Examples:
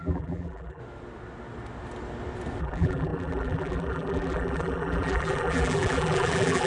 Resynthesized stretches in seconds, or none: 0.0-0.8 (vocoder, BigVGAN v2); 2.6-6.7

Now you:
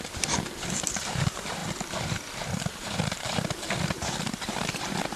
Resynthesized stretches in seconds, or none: 0.0-5.2 (vocoder, BigVGAN v2)

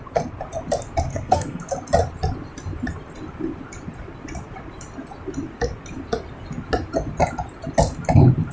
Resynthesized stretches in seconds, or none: 1.1-1.6 (codec, SNAC)